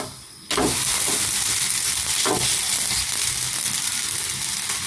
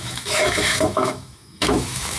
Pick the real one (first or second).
first